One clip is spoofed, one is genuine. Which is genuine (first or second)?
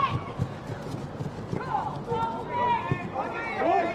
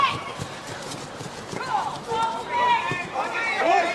first